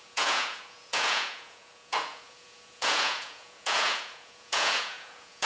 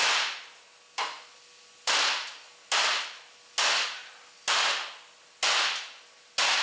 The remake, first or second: first